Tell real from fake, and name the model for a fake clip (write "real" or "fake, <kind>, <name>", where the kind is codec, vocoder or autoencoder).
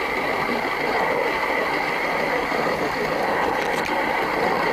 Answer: fake, vocoder, BigVGAN v2